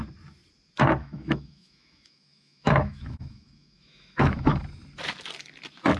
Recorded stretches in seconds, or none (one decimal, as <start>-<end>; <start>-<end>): 0.0-1.0; 4.6-6.0